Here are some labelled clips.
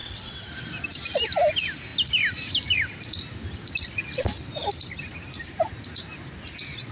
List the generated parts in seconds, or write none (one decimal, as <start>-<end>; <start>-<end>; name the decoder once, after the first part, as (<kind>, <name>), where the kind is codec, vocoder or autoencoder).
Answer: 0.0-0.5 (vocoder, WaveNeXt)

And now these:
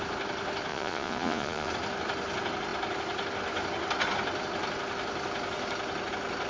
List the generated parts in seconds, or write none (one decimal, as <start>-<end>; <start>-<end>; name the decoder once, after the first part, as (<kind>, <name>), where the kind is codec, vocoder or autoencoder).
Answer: 0.7-1.7 (vocoder, Vocos)

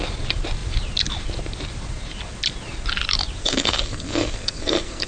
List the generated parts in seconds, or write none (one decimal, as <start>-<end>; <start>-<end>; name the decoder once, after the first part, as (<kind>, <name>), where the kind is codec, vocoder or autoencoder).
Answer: 3.4-5.1 (codec, SNAC)